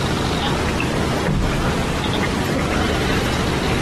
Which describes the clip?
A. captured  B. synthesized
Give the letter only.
A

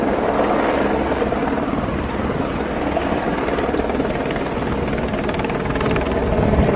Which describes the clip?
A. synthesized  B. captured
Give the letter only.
B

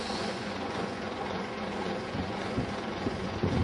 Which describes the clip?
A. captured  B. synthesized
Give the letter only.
B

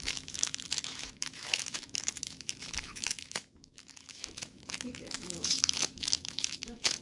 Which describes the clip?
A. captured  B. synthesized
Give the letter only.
B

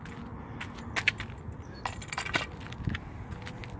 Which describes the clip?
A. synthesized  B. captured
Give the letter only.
B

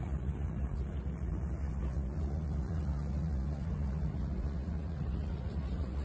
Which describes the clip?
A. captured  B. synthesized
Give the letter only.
B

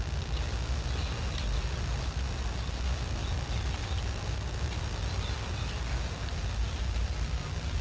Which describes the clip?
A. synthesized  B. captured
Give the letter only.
B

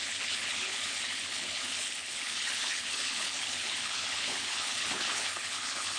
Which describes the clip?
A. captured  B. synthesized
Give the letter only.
B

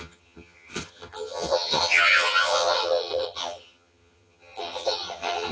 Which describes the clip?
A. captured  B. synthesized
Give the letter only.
B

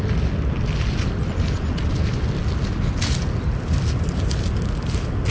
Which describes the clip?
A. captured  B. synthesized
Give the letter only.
A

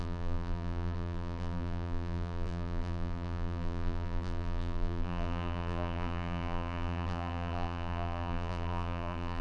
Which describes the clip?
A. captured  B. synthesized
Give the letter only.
B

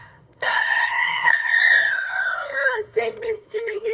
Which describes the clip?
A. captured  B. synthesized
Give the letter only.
B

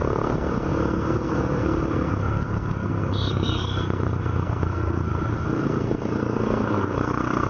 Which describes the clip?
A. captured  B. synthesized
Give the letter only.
B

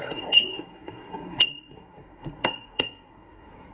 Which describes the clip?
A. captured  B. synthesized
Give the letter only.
B